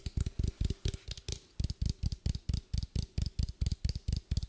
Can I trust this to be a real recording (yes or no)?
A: yes